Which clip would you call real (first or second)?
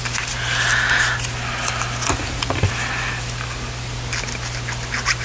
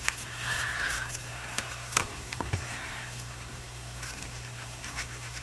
first